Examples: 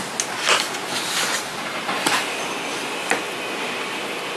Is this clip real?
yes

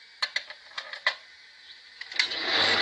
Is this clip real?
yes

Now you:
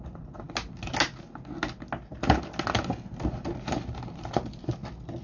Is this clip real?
yes